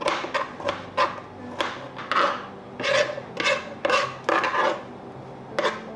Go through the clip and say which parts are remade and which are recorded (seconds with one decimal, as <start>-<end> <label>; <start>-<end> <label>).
0.0-6.0 recorded